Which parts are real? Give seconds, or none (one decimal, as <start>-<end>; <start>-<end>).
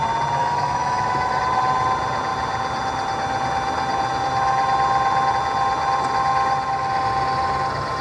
0.0-0.4; 1.4-8.0